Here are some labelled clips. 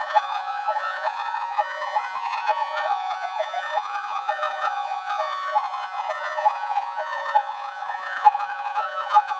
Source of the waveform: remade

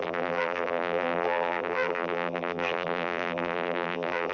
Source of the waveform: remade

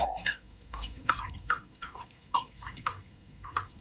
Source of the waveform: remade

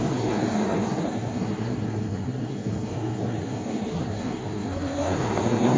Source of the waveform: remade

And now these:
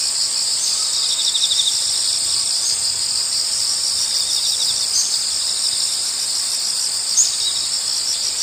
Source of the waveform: recorded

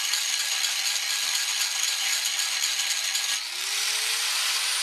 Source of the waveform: recorded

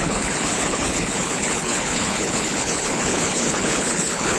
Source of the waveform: remade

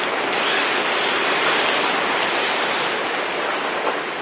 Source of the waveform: recorded